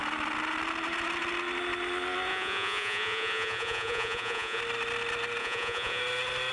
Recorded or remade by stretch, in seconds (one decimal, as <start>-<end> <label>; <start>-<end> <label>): 0.0-2.3 recorded; 2.3-4.6 remade; 4.6-5.4 recorded; 5.4-6.0 remade; 6.0-6.5 recorded